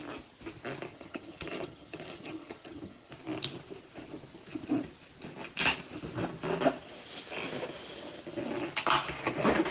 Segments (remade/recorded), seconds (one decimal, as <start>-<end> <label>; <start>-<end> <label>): 0.0-0.9 recorded; 0.9-3.1 remade; 3.1-9.7 recorded